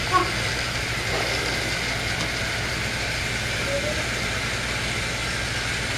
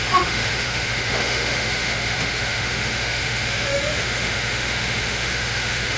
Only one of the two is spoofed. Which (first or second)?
second